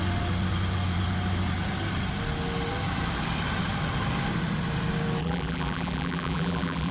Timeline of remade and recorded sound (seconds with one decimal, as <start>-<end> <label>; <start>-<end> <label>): 0.0-5.2 recorded; 5.2-6.9 remade